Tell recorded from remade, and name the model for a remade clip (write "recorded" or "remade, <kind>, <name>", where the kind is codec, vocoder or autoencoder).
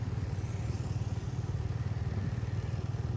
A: recorded